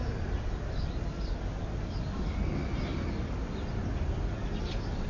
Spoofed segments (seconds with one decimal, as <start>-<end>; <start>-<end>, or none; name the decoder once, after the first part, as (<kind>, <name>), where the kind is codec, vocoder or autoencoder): none